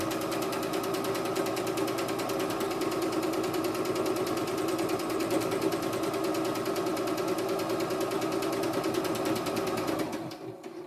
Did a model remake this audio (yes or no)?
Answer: no